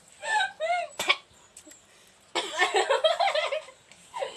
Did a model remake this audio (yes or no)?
no